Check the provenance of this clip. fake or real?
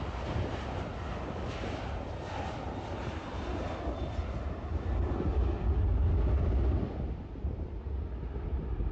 real